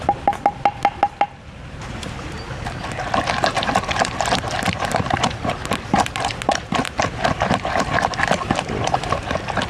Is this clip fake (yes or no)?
no